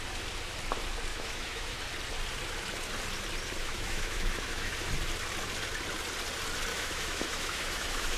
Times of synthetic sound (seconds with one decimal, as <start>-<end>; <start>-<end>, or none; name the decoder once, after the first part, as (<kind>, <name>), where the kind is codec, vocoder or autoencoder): 1.1-1.8 (autoencoder, DAC-VAE); 3.6-4.7; 6.7-8.2